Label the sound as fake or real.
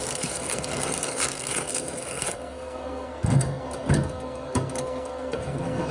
fake